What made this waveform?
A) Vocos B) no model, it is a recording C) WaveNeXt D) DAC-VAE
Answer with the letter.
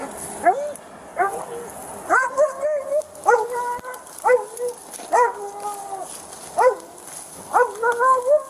B